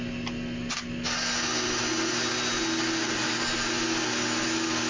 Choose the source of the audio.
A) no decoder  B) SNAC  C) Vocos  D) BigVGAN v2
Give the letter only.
A